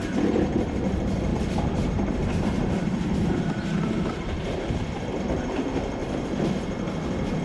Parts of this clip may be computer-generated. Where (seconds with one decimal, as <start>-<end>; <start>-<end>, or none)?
1.3-5.2; 6.0-6.5